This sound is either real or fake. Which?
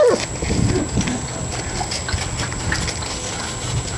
real